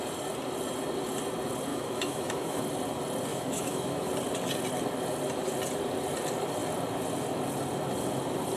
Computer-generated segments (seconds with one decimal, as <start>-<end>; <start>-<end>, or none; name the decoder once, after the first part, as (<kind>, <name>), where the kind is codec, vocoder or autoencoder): 1.7-2.6 (autoencoder, DAC-VAE); 3.3-4.1